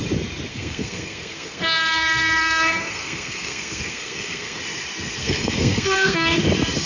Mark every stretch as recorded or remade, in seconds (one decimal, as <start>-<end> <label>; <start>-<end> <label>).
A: 0.0-0.5 recorded; 0.5-4.6 remade; 4.6-5.2 recorded; 5.2-6.4 remade; 6.4-6.9 recorded